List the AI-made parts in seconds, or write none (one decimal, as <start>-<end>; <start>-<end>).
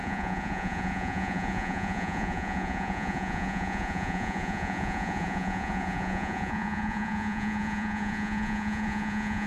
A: 0.0-9.5